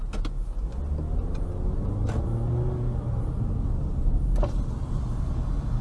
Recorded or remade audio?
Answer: recorded